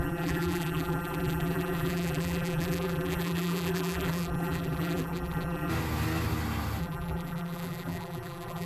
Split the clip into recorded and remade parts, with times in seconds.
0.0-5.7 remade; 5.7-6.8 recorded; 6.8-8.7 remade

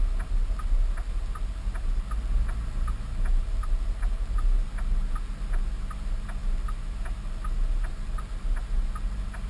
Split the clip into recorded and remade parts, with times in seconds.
0.0-9.5 recorded